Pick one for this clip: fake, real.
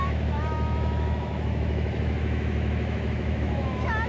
fake